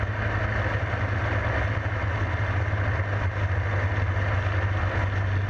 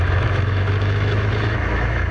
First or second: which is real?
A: first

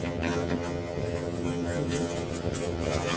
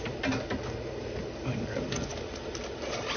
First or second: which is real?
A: second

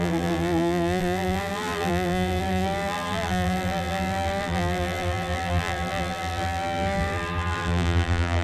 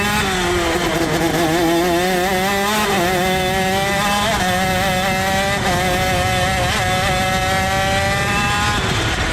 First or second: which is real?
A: second